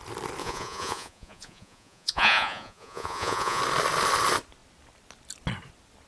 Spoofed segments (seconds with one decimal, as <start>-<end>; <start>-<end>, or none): 0.4-3.6